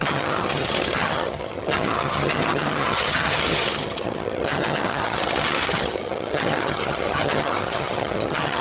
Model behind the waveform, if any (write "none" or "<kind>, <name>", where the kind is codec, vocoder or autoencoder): vocoder, HiFi-GAN